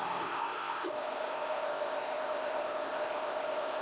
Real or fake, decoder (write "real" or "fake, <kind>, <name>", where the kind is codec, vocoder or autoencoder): fake, codec, ZipCodec